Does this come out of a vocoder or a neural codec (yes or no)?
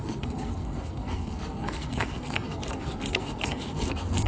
yes